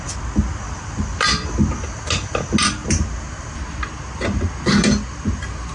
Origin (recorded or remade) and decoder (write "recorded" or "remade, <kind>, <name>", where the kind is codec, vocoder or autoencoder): recorded